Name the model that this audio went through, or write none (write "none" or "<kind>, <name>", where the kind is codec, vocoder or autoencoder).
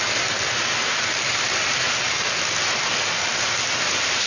none